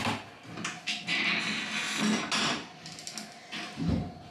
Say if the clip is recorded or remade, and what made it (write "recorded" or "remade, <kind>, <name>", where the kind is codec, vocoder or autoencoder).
recorded